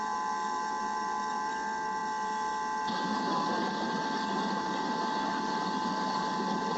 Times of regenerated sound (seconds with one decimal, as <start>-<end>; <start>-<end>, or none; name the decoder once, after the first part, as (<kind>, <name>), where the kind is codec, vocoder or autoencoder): none